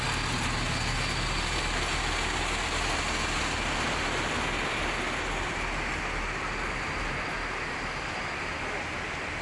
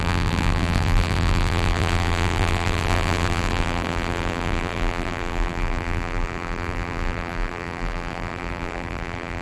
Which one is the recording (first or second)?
first